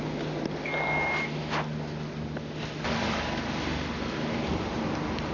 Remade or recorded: recorded